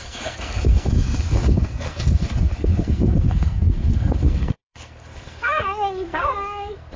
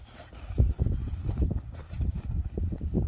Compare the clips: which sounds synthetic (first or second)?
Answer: first